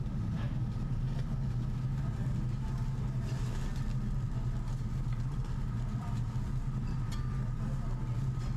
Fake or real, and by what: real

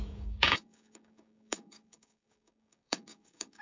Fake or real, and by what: fake, codec, DAC